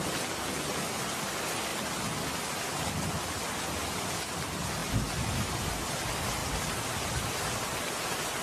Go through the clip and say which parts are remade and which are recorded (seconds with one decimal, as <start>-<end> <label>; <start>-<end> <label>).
0.0-8.4 recorded